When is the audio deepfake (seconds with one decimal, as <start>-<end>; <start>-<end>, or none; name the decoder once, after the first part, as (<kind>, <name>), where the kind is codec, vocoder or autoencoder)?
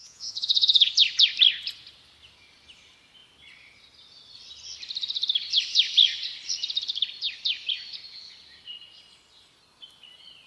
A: 0.0-0.9 (vocoder, Vocos)